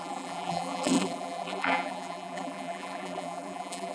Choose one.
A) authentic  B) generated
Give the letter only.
B